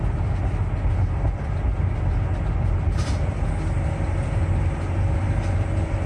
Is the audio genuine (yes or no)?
yes